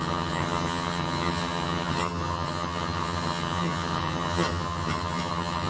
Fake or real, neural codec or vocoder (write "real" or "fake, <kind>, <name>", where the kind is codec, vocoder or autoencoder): fake, vocoder, HiFi-GAN